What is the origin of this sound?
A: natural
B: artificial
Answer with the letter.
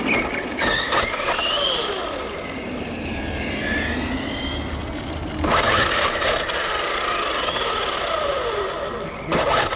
A